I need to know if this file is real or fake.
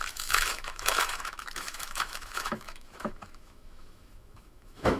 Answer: fake